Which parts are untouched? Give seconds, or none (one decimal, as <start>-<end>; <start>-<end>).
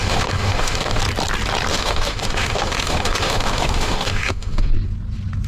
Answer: 1.0-1.7; 4.7-5.5